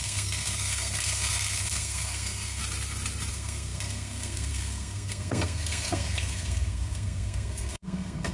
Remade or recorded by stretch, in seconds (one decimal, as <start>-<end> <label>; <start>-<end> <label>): 0.0-2.6 remade; 2.6-3.3 recorded; 3.3-8.3 remade